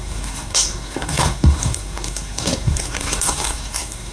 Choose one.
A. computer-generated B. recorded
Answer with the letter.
A